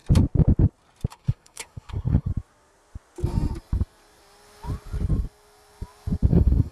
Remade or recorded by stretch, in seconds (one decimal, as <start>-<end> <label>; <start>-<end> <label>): 0.0-1.1 recorded; 1.1-2.3 remade; 2.3-6.3 recorded; 6.3-6.7 remade